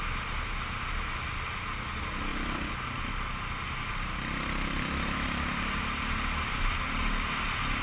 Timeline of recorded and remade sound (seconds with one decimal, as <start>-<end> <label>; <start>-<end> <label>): 0.0-2.3 recorded; 2.3-5.8 remade; 5.8-7.8 recorded